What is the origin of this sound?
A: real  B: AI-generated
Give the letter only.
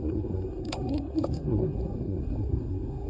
B